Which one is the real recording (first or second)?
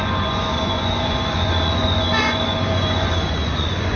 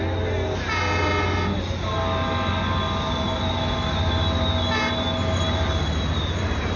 second